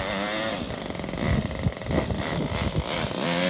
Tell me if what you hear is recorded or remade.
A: recorded